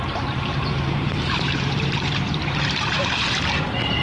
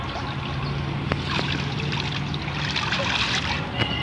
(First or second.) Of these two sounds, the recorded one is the second